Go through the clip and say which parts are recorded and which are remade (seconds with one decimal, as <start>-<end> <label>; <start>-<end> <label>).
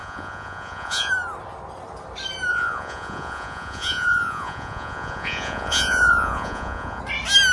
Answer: 0.0-1.1 remade; 1.1-2.5 recorded; 2.5-7.0 remade; 7.0-7.5 recorded